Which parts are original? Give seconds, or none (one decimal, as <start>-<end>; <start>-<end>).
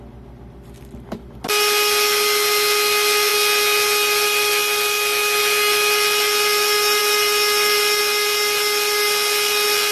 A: 0.0-9.9